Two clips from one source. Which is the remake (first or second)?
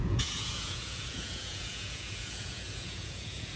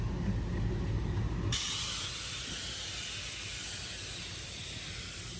first